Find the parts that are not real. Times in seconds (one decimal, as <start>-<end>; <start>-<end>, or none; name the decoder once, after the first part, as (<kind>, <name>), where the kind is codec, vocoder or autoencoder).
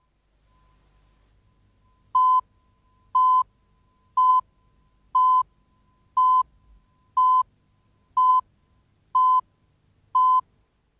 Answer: none